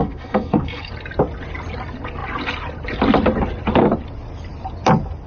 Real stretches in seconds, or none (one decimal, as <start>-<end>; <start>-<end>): 0.9-5.3